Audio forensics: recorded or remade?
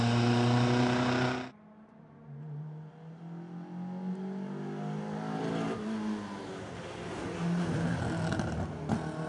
recorded